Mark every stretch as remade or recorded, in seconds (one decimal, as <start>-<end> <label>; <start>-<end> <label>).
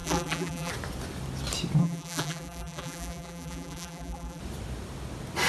0.0-0.7 remade; 0.7-1.8 recorded; 1.8-4.4 remade; 4.4-5.5 recorded